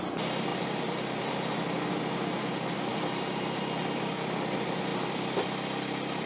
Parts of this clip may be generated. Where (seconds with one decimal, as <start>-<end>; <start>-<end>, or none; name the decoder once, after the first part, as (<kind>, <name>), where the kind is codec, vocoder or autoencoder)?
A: 0.5-1.3 (vocoder, BigVGAN v2); 2.9-4.0; 4.9-6.3